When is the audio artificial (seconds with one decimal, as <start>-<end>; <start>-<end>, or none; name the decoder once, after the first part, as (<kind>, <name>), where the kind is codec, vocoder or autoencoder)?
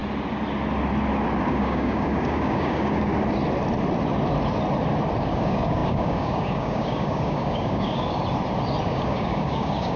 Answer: 1.5-3.1 (codec, DAC); 5.2-8.2; 8.8-10.0